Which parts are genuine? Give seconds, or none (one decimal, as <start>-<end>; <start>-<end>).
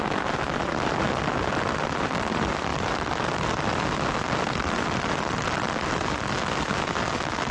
0.0-7.5